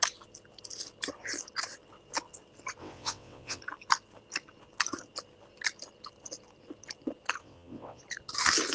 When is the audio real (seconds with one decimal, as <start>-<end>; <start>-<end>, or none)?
0.0-2.8; 3.6-7.4; 8.0-8.7